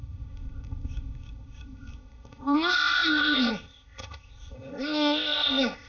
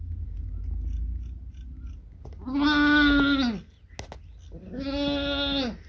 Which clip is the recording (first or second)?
second